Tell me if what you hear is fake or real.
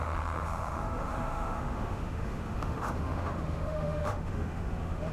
fake